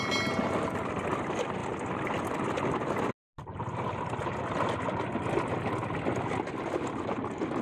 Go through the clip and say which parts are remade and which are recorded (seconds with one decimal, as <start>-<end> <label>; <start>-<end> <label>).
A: 0.0-7.6 recorded